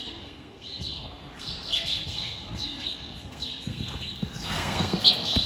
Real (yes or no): no